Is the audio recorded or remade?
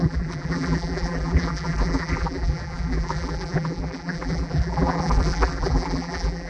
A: remade